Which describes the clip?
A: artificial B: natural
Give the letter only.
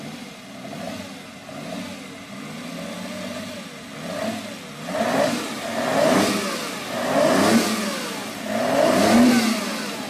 B